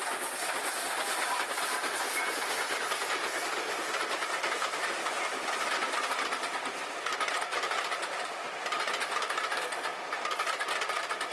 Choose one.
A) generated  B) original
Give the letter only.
B